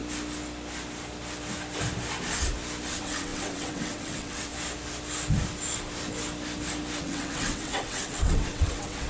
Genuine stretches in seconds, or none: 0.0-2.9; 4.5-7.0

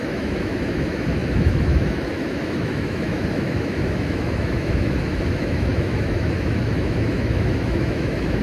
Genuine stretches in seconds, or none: none

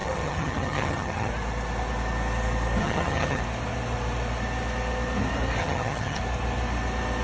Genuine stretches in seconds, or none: 1.3-2.8; 3.4-5.6; 6.2-7.2

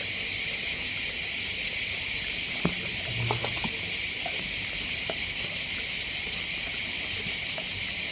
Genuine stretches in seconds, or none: 0.0-8.1

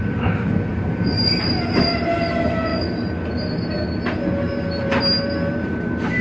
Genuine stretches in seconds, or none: 0.0-6.2

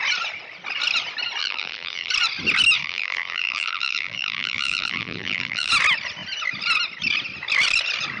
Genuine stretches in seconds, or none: 0.0-1.4; 2.1-2.8; 5.7-8.2

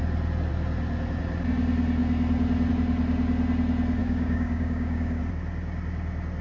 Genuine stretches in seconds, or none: 0.0-4.0; 5.2-6.4